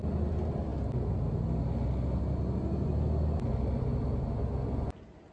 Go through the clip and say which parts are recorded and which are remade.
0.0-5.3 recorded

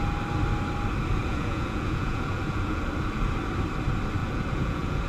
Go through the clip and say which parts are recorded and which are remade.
0.0-1.2 recorded; 1.2-2.8 remade; 2.8-4.2 recorded; 4.2-5.1 remade

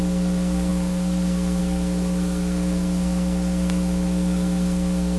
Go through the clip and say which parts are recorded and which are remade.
0.0-5.2 remade